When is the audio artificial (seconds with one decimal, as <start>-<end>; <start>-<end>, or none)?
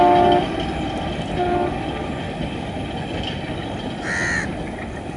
2.0-3.5